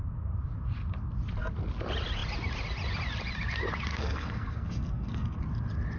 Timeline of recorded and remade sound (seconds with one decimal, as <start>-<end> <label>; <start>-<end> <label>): 0.0-3.9 recorded; 3.9-5.4 remade; 5.4-6.0 recorded